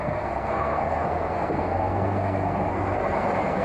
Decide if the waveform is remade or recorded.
remade